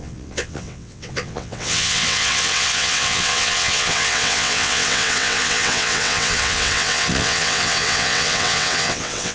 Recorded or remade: remade